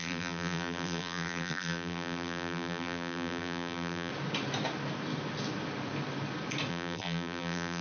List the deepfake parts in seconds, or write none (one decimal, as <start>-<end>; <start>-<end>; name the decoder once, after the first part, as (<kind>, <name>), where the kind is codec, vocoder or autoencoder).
0.0-4.1 (vocoder, BigVGAN v2); 6.7-7.8